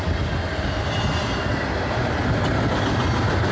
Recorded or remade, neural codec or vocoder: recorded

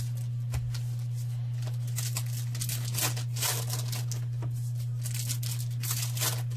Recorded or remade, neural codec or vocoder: recorded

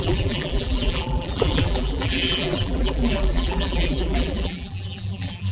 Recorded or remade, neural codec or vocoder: remade, vocoder, BigVGAN v2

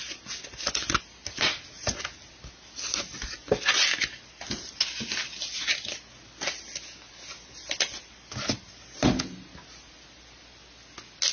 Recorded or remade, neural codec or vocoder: recorded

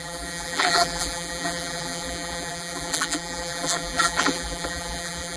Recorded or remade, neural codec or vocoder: remade, vocoder, BigVGAN v2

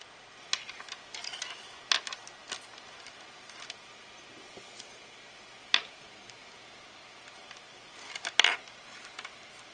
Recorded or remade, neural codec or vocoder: recorded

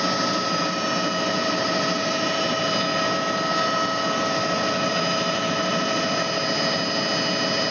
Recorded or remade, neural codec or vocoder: recorded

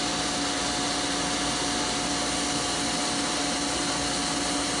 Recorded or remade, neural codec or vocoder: recorded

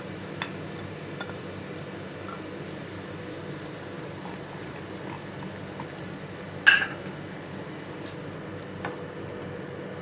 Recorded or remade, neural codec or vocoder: recorded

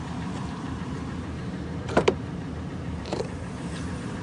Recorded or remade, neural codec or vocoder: remade, vocoder, BigVGAN v2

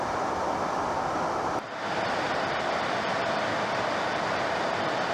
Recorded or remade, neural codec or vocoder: remade, vocoder, BigVGAN v2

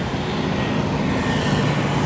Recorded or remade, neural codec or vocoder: recorded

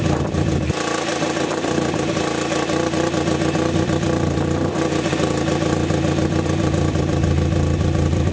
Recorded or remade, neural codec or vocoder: remade, vocoder, BigVGAN v2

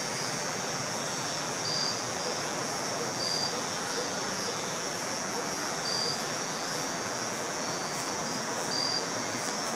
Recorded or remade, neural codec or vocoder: remade, vocoder, BigVGAN v2